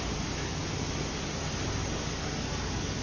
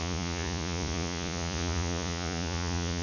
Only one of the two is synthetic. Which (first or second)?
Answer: second